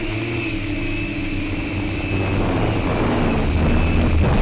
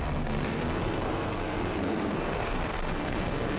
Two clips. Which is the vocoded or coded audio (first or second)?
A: second